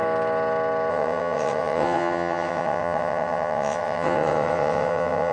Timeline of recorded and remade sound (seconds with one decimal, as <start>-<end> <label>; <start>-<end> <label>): 0.0-0.9 recorded; 0.9-5.3 remade